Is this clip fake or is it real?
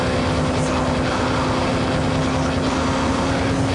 real